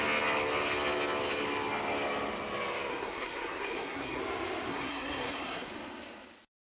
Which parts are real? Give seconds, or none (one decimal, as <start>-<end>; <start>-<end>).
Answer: 0.0-2.9; 4.2-4.7; 5.7-6.6

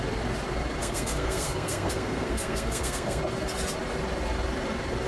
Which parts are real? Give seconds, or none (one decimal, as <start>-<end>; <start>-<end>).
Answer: 0.0-0.8; 3.2-5.1

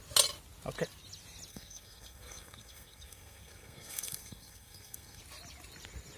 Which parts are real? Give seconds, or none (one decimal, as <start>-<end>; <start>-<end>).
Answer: 0.0-1.5; 5.2-6.2

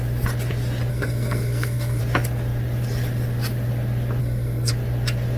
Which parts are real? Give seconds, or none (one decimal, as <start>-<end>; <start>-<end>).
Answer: 0.0-0.9; 2.0-4.2; 4.7-5.4

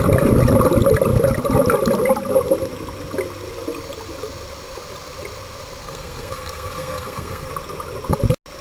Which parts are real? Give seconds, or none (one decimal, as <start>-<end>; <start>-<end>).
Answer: 0.0-5.8; 7.5-8.6